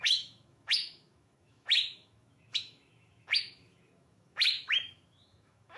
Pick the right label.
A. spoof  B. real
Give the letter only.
A